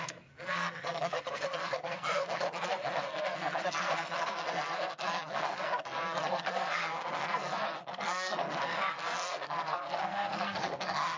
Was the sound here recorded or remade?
remade